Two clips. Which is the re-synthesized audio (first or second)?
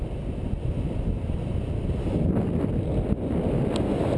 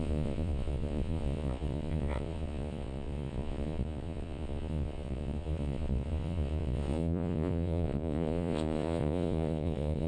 second